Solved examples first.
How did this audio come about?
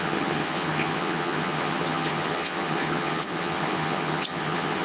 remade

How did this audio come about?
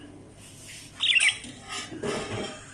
recorded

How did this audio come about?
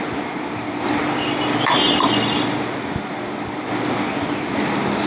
recorded